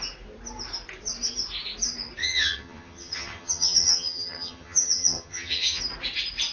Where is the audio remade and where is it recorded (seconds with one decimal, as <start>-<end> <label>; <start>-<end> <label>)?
0.0-2.2 recorded; 2.2-5.8 remade; 5.8-6.5 recorded